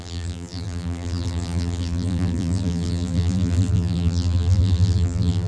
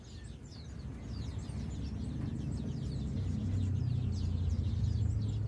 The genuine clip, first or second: second